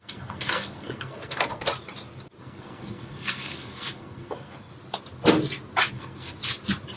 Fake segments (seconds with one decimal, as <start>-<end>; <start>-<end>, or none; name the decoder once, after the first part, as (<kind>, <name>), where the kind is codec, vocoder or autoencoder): 0.0-1.7 (codec, SNAC); 2.4-4.7; 5.9-6.4